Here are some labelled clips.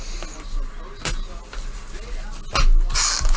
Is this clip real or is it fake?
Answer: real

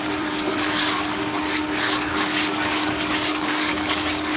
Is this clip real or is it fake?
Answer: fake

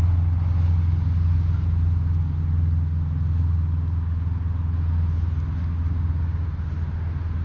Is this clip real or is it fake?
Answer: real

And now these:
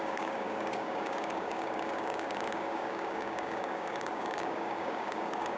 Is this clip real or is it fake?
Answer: fake